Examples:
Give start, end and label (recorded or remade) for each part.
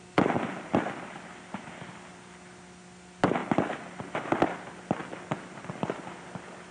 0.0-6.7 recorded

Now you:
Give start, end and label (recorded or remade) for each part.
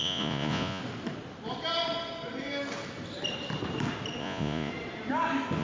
0.0-0.8 remade; 0.8-4.2 recorded; 4.2-4.7 remade; 4.7-5.6 recorded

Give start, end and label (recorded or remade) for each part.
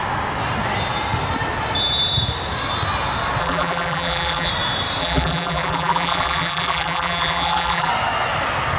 0.0-3.4 recorded; 3.4-4.5 remade; 4.5-5.0 recorded; 5.0-7.9 remade; 7.9-8.8 recorded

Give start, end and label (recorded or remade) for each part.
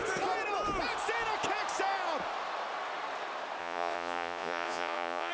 0.0-3.6 recorded; 3.6-5.3 remade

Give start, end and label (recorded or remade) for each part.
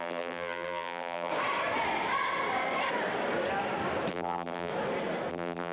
0.0-1.3 remade; 1.3-4.1 recorded; 4.1-4.7 remade; 4.7-5.3 recorded; 5.3-5.7 remade